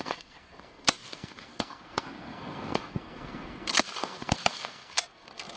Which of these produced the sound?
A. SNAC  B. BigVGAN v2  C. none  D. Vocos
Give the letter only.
A